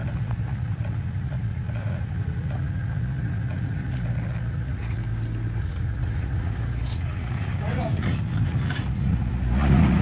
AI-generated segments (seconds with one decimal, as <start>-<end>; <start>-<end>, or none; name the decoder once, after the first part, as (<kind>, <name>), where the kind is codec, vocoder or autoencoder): 0.0-5.0 (vocoder, Vocos); 5.6-10.0